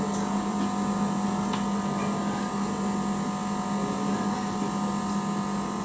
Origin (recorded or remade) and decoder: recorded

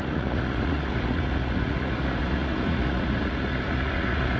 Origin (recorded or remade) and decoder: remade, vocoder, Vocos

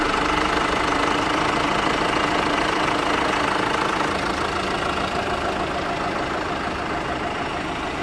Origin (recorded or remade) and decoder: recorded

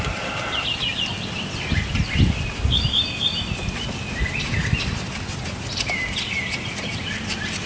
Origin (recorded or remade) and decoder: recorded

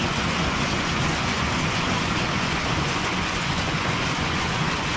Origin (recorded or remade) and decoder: remade, vocoder, Vocos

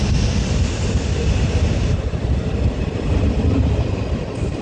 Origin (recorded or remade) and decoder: recorded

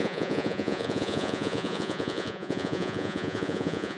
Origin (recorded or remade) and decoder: remade, vocoder, Vocos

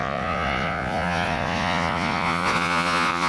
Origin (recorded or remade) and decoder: remade, vocoder, Vocos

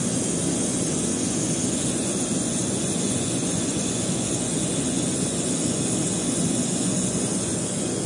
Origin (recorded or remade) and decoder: remade, vocoder, Vocos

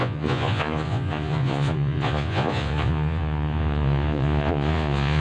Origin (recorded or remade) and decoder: remade, vocoder, Vocos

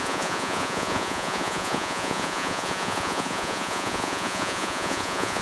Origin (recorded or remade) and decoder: remade, vocoder, Vocos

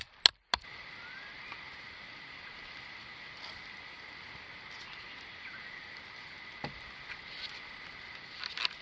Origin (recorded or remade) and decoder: recorded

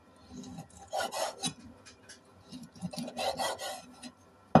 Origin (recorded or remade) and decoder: recorded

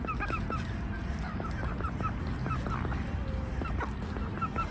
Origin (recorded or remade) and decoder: recorded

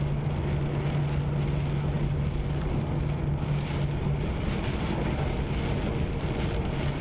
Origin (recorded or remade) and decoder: recorded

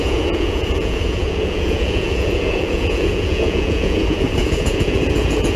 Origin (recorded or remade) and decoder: remade, vocoder, Vocos